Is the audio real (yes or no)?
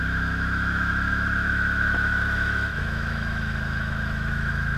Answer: no